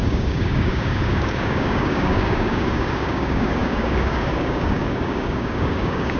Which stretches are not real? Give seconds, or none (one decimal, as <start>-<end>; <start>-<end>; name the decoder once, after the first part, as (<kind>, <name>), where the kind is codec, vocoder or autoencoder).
0.0-6.2 (codec, DAC)